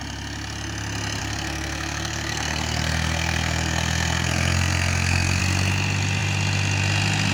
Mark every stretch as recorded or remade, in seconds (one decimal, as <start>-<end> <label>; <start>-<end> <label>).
0.0-1.2 recorded; 1.2-5.4 remade; 5.4-7.3 recorded